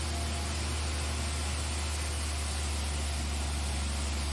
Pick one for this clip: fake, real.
real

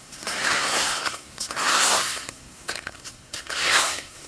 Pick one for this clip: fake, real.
fake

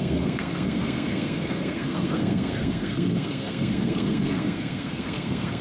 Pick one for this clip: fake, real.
fake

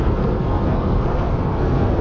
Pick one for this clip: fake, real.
fake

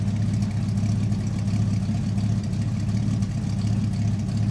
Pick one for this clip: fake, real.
real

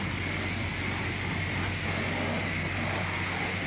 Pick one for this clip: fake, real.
real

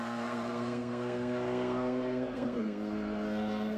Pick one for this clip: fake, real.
fake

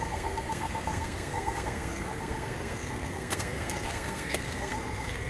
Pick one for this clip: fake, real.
fake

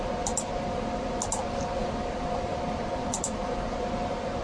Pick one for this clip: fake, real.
real